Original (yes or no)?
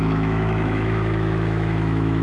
no